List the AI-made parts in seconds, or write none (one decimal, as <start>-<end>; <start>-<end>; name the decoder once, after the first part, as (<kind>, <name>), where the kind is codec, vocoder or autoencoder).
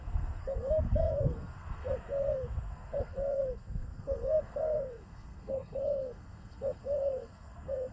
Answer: 0.0-7.9 (codec, SNAC)